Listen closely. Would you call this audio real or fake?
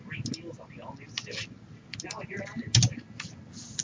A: real